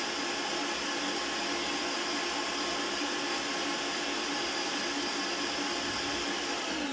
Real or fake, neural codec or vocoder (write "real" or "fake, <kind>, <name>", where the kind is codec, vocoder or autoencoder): real